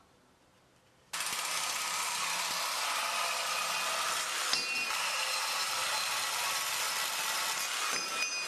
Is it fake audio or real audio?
real